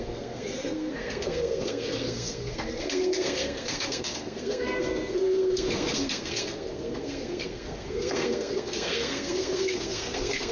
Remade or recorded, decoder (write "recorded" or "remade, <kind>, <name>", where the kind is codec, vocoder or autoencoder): remade, codec, SNAC